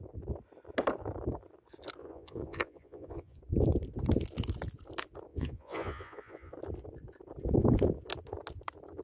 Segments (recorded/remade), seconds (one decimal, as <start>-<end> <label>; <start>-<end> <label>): 0.0-2.0 recorded; 2.0-3.4 remade; 3.4-5.3 recorded; 5.3-6.5 remade; 6.5-9.0 recorded